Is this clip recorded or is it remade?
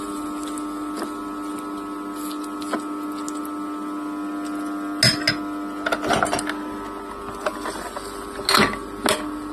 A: recorded